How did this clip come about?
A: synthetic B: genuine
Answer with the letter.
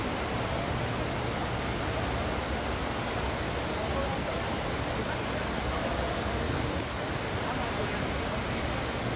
B